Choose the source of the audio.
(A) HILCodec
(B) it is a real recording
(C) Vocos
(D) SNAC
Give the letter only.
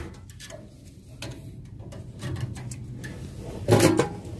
B